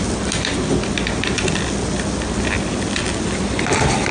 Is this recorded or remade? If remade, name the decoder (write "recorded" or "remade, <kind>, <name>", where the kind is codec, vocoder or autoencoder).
recorded